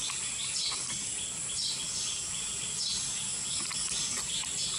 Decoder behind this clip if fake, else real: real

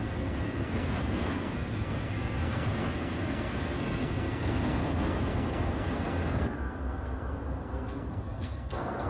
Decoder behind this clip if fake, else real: fake, codec, SNAC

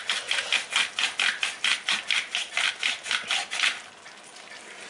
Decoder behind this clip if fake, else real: real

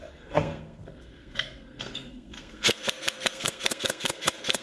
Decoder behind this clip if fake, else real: fake, codec, SNAC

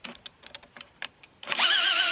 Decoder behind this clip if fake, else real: real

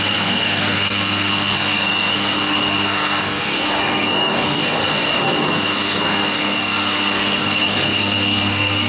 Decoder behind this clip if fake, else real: fake, codec, SNAC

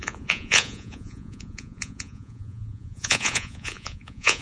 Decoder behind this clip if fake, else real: fake, vocoder, Vocos